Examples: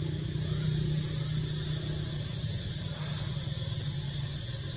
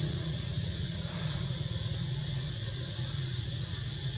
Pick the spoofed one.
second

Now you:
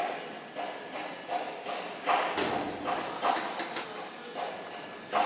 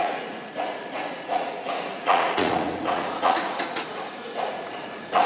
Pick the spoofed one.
second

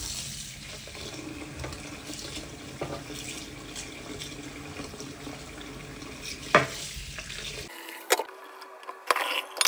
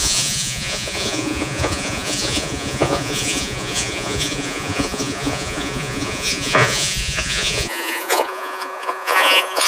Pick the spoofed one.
second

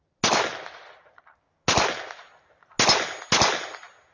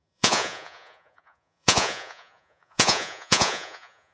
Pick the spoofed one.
second